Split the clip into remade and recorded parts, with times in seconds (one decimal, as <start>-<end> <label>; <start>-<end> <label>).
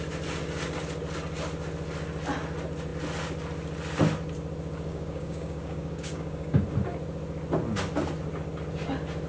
0.0-4.9 recorded; 4.9-6.6 remade; 6.6-9.3 recorded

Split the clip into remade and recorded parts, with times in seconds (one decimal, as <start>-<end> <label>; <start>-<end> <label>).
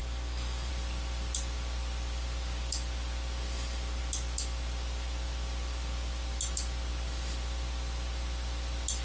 0.0-0.7 remade; 0.7-9.0 recorded